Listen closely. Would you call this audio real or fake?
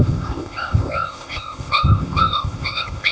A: fake